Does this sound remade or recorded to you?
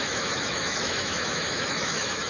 remade